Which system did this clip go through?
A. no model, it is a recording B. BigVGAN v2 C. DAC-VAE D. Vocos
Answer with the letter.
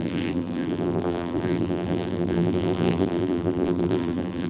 B